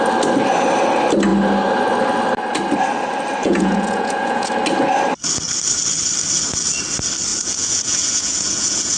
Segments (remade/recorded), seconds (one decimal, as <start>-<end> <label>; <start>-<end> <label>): 0.0-3.4 recorded; 3.4-4.5 remade; 4.5-7.3 recorded; 7.3-9.0 remade